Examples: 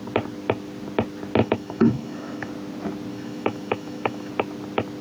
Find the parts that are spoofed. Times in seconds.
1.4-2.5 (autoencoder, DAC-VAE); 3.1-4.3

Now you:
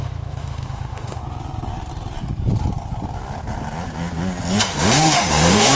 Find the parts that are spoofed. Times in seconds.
0.0-1.2 (autoencoder, DAC-VAE); 4.6-5.7

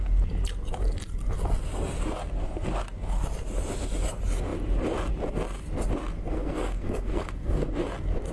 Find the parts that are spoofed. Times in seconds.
6.2-7.7 (codec, SNAC)

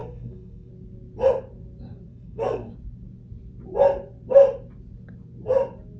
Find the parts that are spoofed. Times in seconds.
0.0-0.7 (codec, SNAC); 2.1-2.7

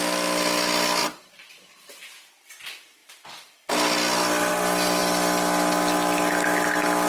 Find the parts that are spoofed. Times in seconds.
1.0-1.6 (vocoder, BigVGAN v2)

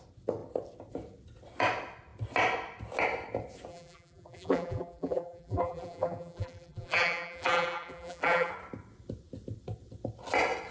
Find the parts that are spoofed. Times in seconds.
3.7-8.5 (vocoder, BigVGAN v2)

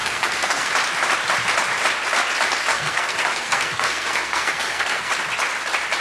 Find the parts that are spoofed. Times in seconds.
0.0-0.7 (codec, SNAC); 2.7-5.1

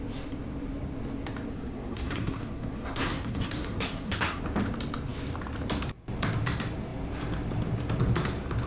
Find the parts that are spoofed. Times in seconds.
1.5-4.4 (codec, SNAC)